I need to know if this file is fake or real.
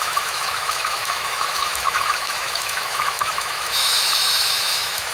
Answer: fake